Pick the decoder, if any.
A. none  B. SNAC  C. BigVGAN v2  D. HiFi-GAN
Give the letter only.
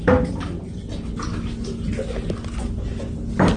A